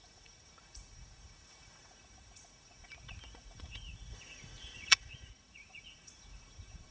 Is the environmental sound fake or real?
fake